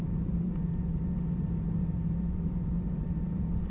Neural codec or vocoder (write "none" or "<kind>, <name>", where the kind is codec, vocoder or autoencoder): vocoder, BigVGAN v2